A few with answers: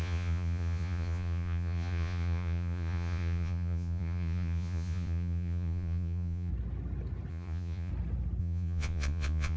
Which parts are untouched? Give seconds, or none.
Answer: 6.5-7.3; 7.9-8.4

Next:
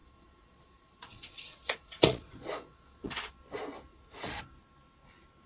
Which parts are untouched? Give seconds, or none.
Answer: 3.3-3.9; 4.4-5.5

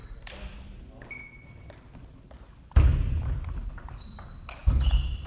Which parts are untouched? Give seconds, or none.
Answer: 0.0-5.3

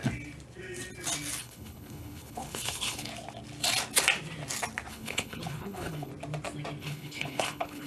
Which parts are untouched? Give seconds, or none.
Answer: 0.0-1.4; 3.1-4.9; 6.1-6.8